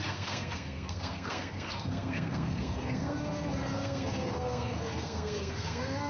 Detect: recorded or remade remade